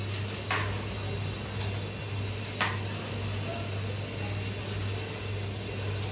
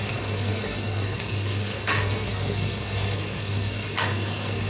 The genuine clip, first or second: first